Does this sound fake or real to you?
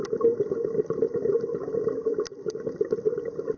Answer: real